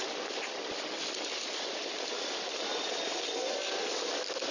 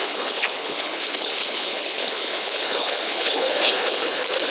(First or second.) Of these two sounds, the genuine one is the first